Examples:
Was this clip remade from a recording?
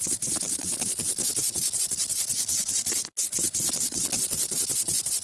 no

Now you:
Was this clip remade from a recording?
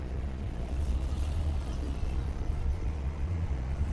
yes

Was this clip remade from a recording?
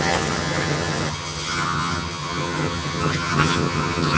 yes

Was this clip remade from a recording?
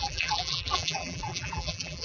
yes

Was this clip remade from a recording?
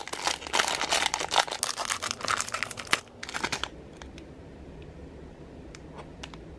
no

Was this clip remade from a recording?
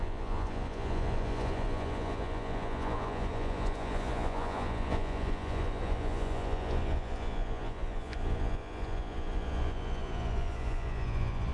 yes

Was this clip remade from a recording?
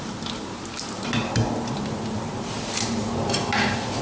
no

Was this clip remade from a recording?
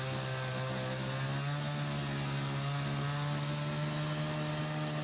no